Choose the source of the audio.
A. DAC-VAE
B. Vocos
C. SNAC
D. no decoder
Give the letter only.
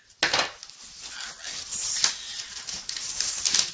D